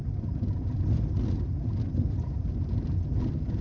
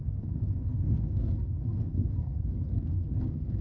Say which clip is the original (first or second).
first